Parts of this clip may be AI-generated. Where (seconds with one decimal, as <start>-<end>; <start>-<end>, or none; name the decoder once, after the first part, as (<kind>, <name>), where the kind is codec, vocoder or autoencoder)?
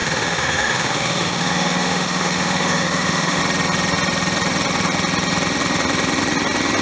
0.0-3.4 (autoencoder, DAC-VAE)